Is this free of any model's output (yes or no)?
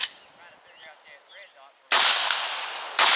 yes